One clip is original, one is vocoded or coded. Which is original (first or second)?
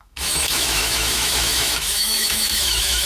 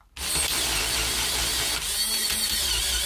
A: second